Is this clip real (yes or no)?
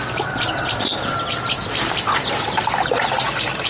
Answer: yes